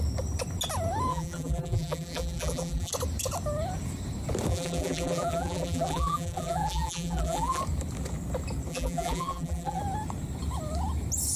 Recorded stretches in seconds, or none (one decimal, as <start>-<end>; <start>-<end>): 0.0-1.1; 2.9-4.5; 7.6-8.7; 9.8-11.4